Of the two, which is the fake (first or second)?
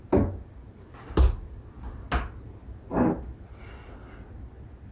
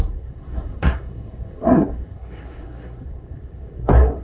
second